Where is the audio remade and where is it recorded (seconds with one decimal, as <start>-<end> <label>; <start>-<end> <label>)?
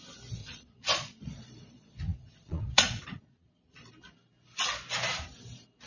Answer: 0.0-0.4 recorded; 0.4-3.9 remade; 3.9-5.9 recorded